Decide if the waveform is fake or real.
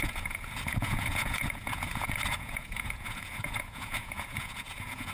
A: fake